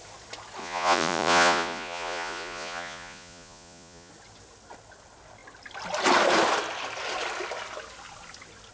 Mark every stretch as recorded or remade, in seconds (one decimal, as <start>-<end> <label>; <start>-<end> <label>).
0.0-0.6 recorded; 0.6-4.1 remade; 4.1-8.7 recorded